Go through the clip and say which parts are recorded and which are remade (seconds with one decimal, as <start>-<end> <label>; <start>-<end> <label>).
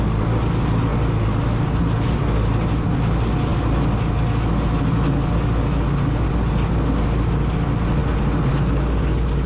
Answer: 0.0-9.5 recorded